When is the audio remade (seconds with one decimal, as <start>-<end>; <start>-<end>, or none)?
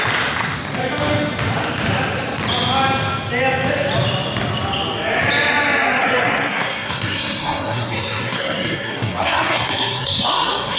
6.0-10.8